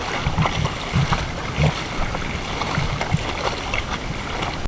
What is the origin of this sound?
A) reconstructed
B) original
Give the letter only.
B